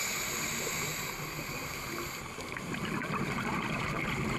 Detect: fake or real real